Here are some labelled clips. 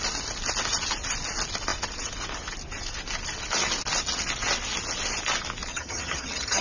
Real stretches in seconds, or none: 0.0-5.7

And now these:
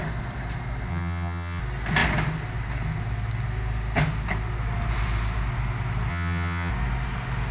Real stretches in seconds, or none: 0.0-0.9; 1.6-6.1; 6.7-7.5

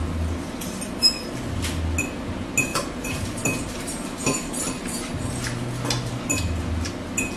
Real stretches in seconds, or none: 0.0-2.7; 5.7-7.4

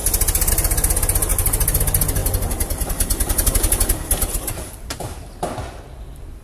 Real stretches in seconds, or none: 0.0-1.3; 1.8-4.3; 5.4-6.4

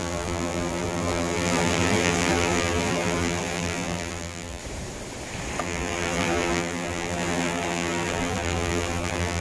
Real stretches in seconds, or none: 4.6-5.6

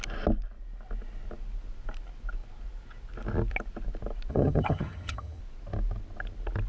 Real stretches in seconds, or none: 0.0-4.3; 5.4-6.7

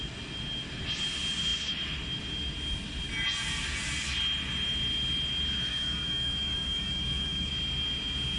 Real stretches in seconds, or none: 0.0-5.7; 7.5-8.4